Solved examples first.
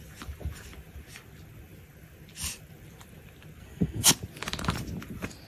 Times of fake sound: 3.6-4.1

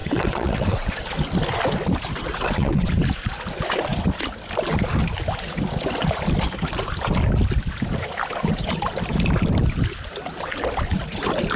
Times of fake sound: 0.0-1.0; 2.2-2.9

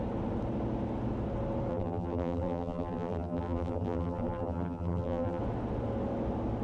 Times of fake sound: 1.7-5.4

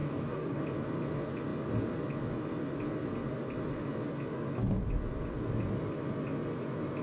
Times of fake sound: 0.0-0.6